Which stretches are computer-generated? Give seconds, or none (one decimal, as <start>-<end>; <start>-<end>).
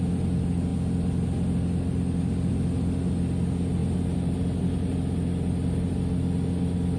none